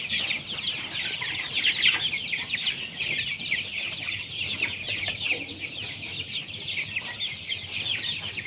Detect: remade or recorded recorded